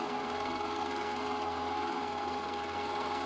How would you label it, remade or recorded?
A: remade